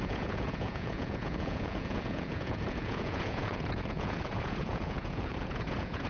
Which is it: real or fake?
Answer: fake